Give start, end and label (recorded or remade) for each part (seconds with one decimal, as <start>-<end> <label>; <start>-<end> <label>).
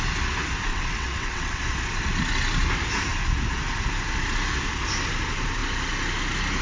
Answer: 0.0-0.7 recorded; 0.7-1.6 remade; 1.6-6.6 recorded